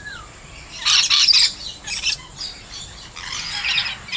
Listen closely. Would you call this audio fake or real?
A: fake